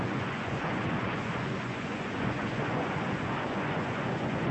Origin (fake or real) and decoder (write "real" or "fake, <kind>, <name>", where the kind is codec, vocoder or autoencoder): fake, vocoder, Vocos